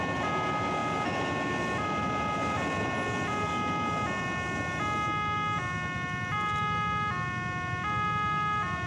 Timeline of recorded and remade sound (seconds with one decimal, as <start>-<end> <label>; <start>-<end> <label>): 0.0-8.9 recorded